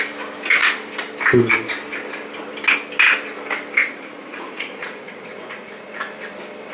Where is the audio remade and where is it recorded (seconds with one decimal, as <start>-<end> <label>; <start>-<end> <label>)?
0.0-3.8 recorded; 3.8-6.1 remade; 6.1-6.7 recorded